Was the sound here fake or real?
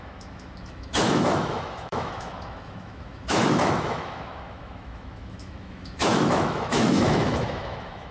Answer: fake